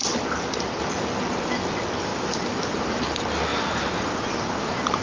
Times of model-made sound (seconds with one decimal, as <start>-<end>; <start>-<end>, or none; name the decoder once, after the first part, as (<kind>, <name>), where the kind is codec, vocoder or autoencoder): 0.0-0.8 (vocoder, BigVGAN v2); 2.1-3.0; 3.5-5.0